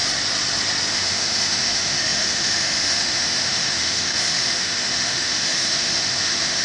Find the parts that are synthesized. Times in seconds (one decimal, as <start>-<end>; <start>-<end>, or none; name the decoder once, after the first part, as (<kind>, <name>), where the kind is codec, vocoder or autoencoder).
0.9-6.6 (autoencoder, DAC-VAE)